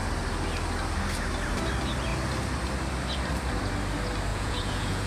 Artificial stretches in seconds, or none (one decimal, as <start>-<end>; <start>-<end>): 4.3-5.1